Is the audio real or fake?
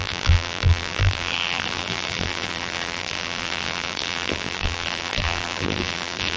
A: fake